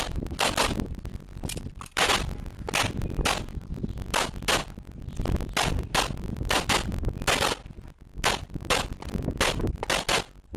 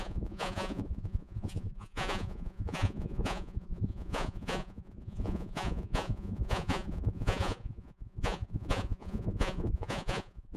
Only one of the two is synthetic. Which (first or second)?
second